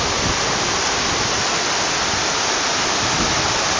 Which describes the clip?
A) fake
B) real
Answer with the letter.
B